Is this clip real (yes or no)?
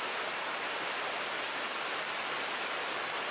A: yes